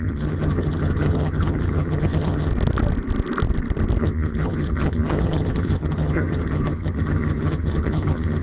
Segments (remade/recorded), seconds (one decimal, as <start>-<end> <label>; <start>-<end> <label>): 0.0-2.5 remade; 2.5-4.0 recorded; 4.0-8.4 remade

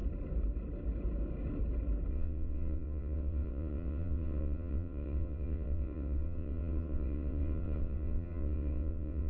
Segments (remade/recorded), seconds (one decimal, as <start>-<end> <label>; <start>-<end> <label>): 0.0-2.1 recorded; 2.1-9.3 remade

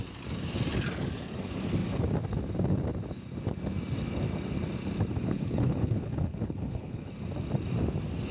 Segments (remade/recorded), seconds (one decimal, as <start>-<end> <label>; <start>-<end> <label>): 0.0-5.2 recorded; 5.2-7.1 remade; 7.1-8.3 recorded

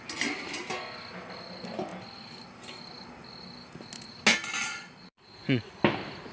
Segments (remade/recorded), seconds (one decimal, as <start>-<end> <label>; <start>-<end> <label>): 0.0-4.7 recorded; 4.7-5.7 remade; 5.7-6.3 recorded

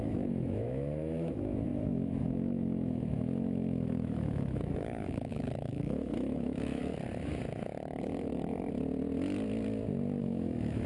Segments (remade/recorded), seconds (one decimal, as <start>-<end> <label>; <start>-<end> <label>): 0.0-6.8 remade; 6.8-10.2 recorded; 10.2-10.9 remade